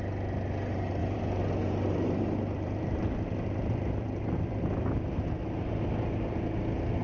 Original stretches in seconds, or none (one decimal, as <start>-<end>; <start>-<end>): 0.0-1.0; 5.2-7.0